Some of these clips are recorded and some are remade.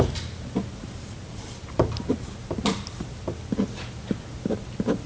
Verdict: recorded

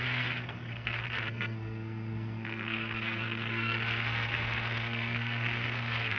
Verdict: remade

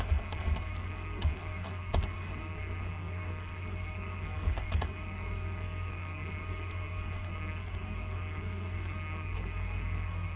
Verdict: remade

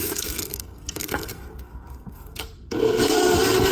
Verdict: remade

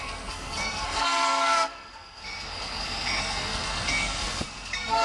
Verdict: remade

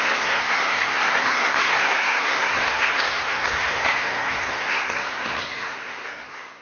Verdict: remade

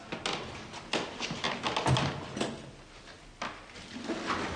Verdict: recorded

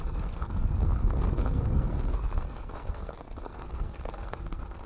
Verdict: remade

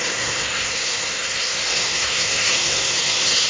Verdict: remade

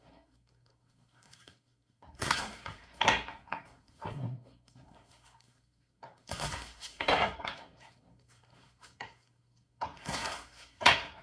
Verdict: remade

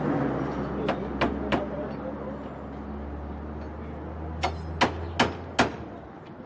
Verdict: recorded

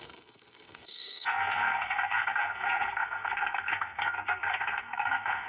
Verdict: remade